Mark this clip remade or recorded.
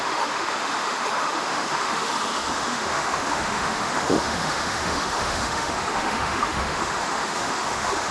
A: remade